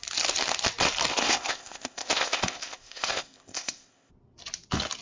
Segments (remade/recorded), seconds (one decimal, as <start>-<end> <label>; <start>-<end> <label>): 0.0-1.1 recorded; 1.1-4.1 remade; 4.1-5.0 recorded

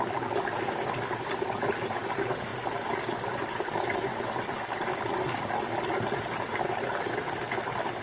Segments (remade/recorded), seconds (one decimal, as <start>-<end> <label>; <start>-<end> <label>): 0.0-8.0 recorded